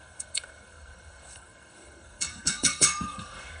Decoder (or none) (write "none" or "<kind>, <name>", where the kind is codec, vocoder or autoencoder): codec, SNAC